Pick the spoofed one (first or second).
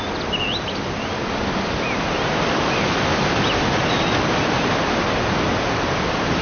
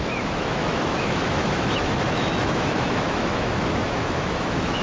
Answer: second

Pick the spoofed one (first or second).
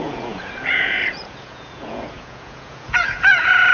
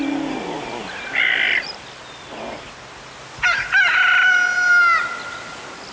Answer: first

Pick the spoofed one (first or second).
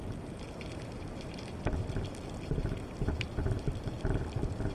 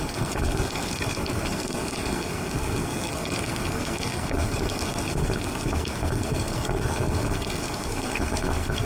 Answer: second